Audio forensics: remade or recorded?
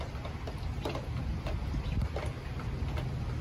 recorded